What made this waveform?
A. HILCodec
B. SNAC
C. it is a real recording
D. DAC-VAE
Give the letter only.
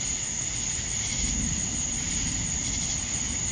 C